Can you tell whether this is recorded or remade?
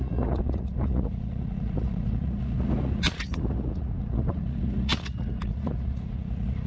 remade